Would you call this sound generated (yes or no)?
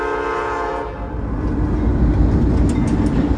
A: no